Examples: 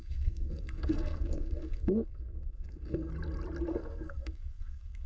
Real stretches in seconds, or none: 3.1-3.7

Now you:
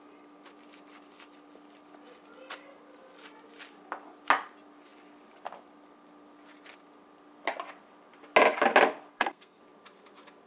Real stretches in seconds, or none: 0.0-9.1; 9.6-10.5